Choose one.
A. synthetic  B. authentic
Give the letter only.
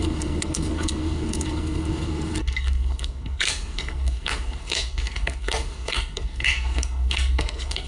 A